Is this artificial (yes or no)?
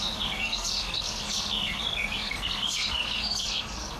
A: yes